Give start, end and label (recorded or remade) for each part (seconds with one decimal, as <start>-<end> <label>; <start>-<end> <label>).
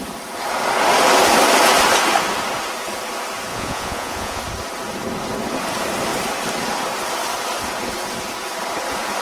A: 0.0-3.5 recorded; 3.5-4.4 remade; 4.4-9.2 recorded